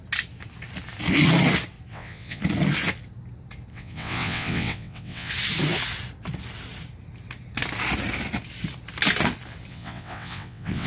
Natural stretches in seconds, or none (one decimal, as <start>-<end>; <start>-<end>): 0.0-1.9; 2.4-3.7; 5.3-9.7